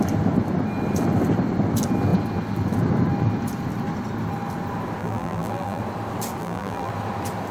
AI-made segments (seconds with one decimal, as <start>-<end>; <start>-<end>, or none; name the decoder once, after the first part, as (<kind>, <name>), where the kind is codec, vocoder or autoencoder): 5.0-5.8 (vocoder, BigVGAN v2); 6.4-6.9